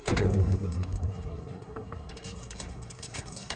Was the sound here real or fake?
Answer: fake